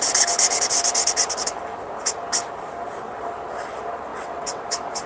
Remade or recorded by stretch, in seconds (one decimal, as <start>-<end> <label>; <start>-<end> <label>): 0.0-4.1 recorded; 4.1-4.6 remade; 4.6-5.1 recorded